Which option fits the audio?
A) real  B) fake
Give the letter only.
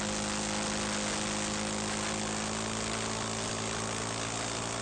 A